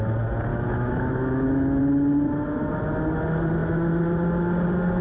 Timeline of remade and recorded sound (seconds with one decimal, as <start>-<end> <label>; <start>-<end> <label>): 0.0-0.5 recorded; 0.5-1.8 remade; 1.8-5.0 recorded